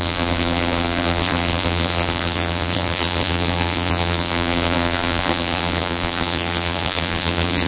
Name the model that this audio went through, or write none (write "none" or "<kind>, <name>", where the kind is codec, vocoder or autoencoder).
vocoder, BigVGAN v2